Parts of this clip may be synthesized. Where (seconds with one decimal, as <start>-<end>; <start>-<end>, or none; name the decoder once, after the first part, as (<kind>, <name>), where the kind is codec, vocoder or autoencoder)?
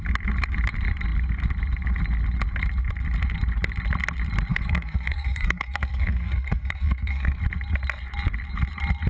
4.5-7.4 (codec, SNAC)